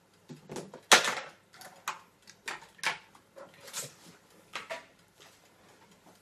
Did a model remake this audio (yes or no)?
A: no